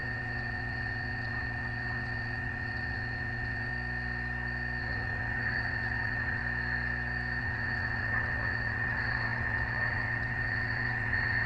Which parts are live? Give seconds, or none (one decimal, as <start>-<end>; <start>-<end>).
3.7-4.8; 6.4-7.4